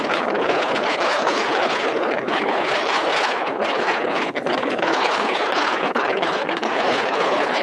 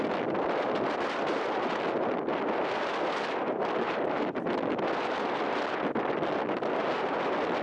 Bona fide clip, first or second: second